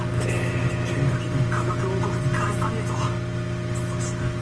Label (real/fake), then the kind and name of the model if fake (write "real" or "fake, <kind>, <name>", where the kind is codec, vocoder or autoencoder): real